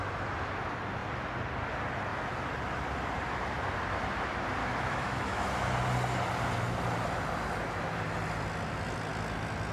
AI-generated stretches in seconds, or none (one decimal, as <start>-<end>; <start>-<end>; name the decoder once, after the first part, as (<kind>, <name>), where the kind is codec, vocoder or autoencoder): 4.6-5.5 (autoencoder, DAC-VAE)